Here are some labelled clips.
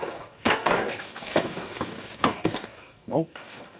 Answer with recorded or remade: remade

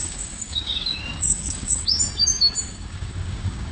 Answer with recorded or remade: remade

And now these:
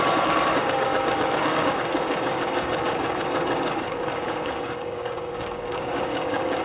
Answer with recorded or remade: remade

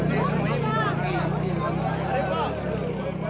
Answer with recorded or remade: recorded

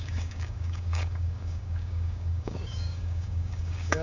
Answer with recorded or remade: remade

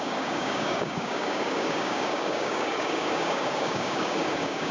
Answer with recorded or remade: remade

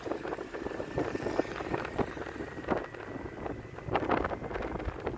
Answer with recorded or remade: recorded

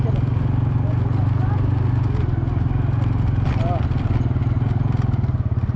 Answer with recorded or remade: recorded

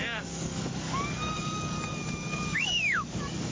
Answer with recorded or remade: remade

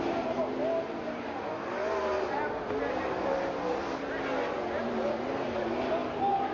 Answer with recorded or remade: recorded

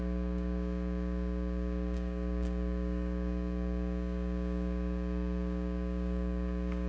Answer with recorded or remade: remade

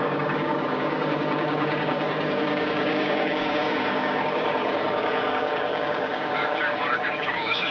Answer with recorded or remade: remade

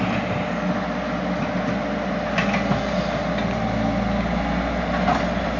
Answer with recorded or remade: recorded